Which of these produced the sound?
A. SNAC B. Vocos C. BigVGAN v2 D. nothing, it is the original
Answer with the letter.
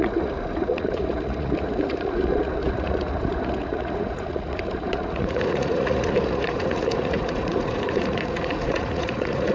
B